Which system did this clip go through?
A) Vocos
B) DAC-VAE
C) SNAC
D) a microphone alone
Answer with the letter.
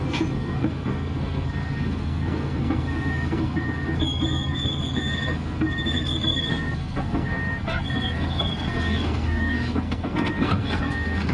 C